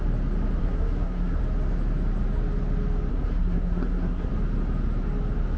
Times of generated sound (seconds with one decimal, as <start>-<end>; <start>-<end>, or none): 0.6-1.4; 3.1-4.3